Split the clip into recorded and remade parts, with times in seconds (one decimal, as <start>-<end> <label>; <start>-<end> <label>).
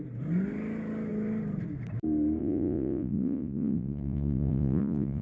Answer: 0.0-2.4 recorded; 2.4-5.2 remade